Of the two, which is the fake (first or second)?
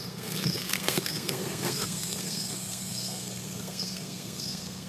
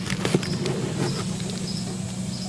first